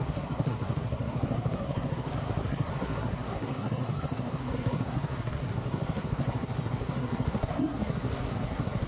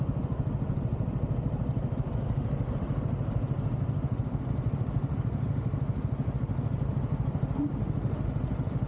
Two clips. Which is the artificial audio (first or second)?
first